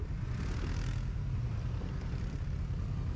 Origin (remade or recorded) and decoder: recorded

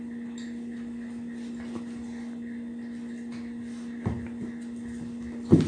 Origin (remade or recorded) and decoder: recorded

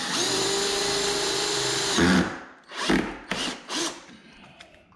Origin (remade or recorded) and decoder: remade, vocoder, BigVGAN v2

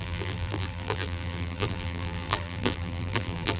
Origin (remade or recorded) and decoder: remade, vocoder, BigVGAN v2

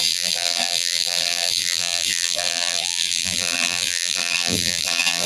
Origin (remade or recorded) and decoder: remade, vocoder, BigVGAN v2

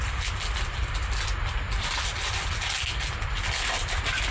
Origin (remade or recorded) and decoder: recorded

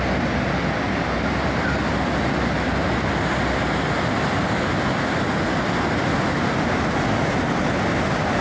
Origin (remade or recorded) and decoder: recorded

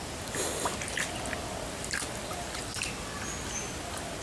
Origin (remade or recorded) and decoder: recorded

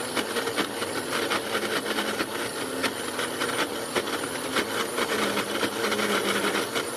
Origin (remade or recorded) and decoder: recorded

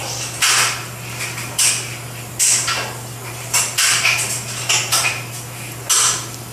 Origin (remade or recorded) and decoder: recorded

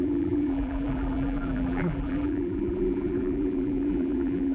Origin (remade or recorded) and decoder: remade, vocoder, BigVGAN v2